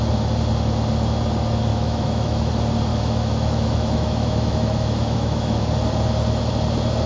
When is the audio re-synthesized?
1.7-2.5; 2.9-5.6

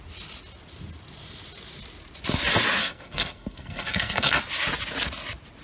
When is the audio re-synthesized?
2.8-4.4